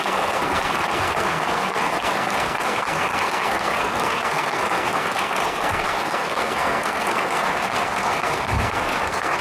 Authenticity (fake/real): fake